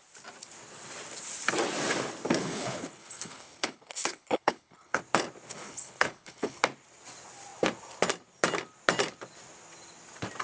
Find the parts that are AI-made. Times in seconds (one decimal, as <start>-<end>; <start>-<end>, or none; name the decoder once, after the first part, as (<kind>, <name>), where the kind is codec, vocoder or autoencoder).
2.4-5.0 (codec, HILCodec); 5.5-6.6